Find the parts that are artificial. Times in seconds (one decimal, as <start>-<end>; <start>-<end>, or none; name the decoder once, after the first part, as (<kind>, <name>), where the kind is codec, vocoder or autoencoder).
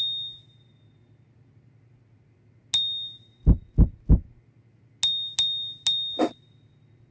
none